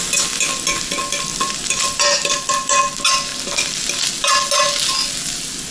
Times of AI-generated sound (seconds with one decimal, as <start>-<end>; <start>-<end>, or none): 1.3-2.5